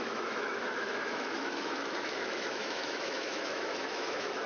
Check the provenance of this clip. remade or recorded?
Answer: remade